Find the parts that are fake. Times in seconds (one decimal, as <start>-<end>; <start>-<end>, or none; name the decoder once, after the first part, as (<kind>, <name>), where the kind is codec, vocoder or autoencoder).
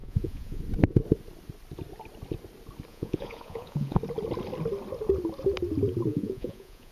0.0-0.6 (vocoder, Vocos); 2.9-4.0; 6.1-6.9